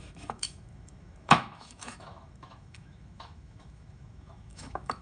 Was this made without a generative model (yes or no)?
no